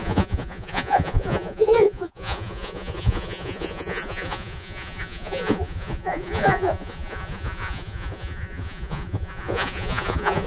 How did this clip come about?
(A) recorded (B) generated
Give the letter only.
B